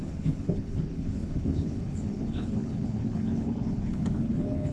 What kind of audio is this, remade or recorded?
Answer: remade